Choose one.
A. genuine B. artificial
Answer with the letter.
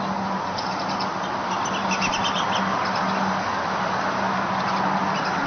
B